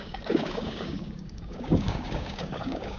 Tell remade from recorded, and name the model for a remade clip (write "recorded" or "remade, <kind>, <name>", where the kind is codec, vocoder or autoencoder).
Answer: remade, codec, DAC